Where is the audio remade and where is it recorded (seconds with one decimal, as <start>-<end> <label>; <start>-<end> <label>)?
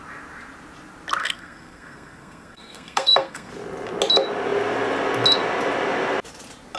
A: 0.0-1.2 recorded; 1.2-3.5 remade; 3.5-6.8 recorded